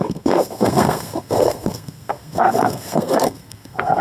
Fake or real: fake